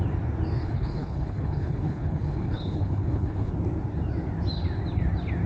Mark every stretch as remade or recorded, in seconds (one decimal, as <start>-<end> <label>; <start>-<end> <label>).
0.0-0.6 recorded; 0.6-3.5 remade; 3.5-5.5 recorded